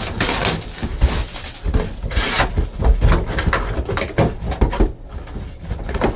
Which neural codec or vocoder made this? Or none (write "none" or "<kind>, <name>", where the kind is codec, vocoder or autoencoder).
none